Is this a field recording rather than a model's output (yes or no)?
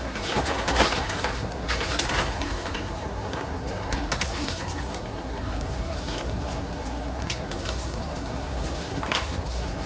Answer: no